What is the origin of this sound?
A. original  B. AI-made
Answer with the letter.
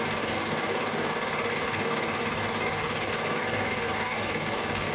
B